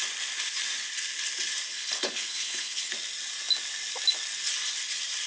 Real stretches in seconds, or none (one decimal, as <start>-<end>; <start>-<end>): 0.0-1.7; 2.9-5.3